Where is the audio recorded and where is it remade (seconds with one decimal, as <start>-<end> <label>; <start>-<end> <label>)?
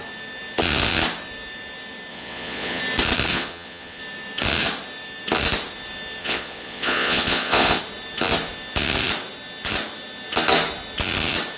0.0-2.1 recorded; 2.1-2.8 remade; 2.8-3.3 recorded; 3.3-4.0 remade; 4.0-6.2 recorded; 6.2-7.8 remade; 7.8-11.6 recorded